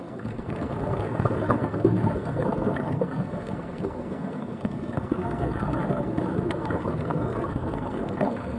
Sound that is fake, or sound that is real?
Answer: fake